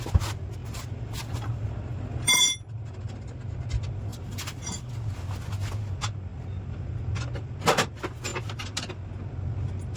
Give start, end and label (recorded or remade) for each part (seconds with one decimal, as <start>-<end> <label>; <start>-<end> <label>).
0.0-0.6 recorded; 0.6-3.2 remade; 3.2-4.1 recorded; 4.1-4.9 remade; 4.9-10.0 recorded